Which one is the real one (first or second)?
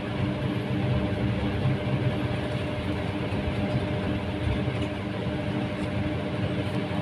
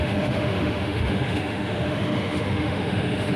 first